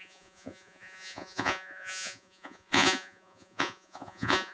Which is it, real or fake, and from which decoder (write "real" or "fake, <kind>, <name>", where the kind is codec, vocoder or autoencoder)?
fake, vocoder, Vocos